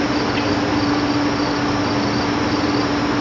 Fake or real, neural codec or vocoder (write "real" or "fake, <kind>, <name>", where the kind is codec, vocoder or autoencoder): real